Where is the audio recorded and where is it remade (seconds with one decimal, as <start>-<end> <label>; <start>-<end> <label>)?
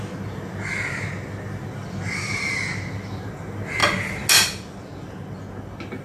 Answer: 0.0-6.0 recorded